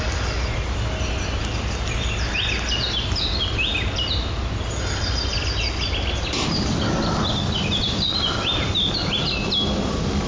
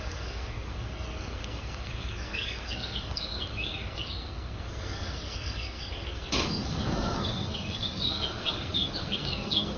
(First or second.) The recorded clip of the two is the first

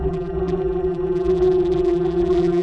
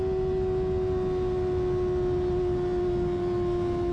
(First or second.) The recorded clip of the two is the second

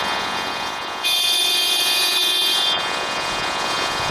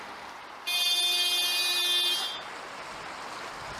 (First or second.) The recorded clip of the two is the second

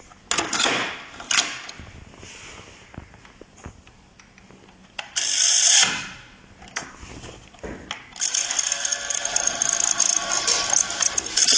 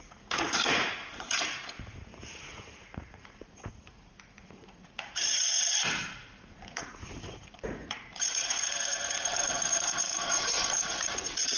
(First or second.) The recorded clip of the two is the first